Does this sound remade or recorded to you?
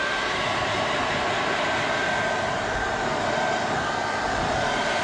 remade